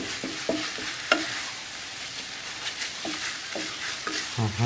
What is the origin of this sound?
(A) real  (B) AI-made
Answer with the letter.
B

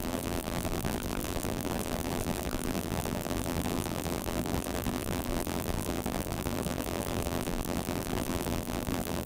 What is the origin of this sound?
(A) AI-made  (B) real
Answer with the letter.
A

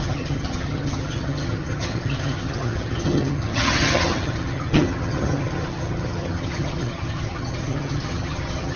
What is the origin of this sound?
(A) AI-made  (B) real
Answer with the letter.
A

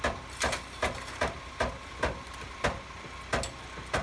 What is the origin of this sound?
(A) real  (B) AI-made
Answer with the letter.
A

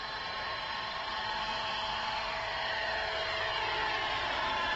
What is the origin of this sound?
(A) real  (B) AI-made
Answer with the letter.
A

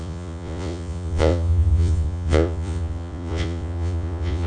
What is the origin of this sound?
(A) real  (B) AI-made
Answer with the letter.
B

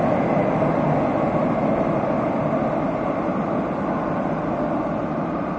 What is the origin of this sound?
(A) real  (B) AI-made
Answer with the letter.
A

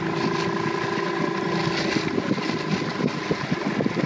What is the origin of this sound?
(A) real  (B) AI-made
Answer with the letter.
A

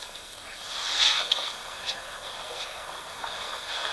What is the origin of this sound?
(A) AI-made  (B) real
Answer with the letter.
A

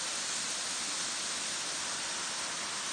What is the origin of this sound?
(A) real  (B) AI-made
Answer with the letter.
A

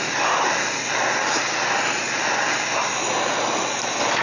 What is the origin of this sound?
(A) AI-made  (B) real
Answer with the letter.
B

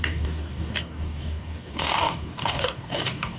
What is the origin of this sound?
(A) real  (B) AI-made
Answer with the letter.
B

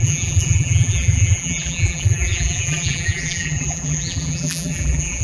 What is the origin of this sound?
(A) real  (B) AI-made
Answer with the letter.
B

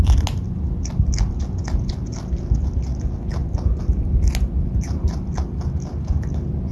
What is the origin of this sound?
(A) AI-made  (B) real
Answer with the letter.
B